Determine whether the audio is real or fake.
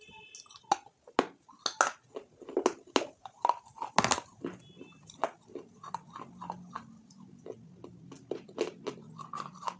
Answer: real